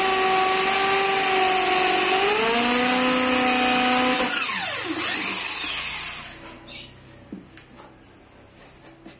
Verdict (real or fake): real